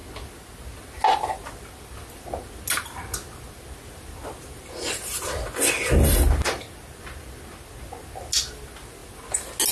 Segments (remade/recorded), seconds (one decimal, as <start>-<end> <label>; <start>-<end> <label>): 0.0-9.7 recorded